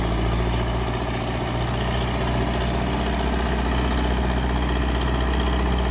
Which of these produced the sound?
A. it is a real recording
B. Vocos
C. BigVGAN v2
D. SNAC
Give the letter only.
A